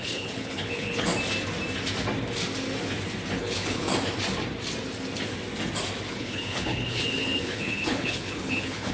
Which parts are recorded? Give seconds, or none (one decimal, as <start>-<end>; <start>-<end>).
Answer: 1.1-3.4; 3.9-6.1